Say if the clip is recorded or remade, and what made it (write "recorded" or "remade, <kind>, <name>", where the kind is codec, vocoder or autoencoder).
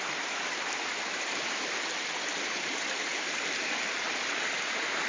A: remade, vocoder, BigVGAN v2